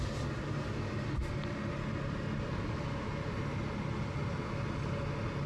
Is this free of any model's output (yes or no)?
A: yes